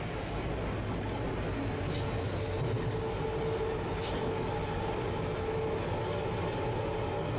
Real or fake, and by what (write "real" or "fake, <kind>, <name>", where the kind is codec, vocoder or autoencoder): real